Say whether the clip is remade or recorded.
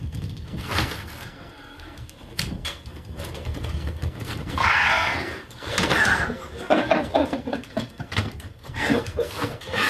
remade